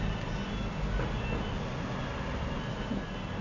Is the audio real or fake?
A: real